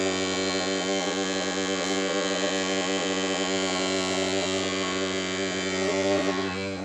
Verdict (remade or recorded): remade